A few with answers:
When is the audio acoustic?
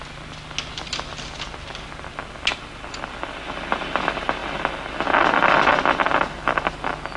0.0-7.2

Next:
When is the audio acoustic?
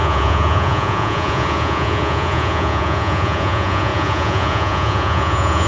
none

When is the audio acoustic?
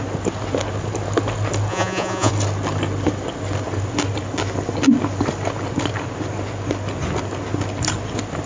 0.0-1.7; 2.3-8.5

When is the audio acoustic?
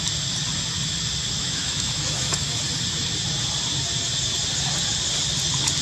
0.0-1.4; 2.6-5.8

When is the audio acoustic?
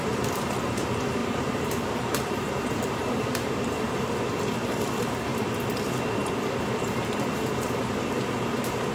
5.3-6.6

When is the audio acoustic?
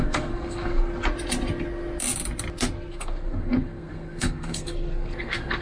0.9-2.9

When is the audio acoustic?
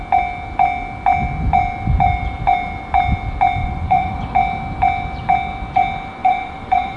0.0-3.6; 4.2-6.2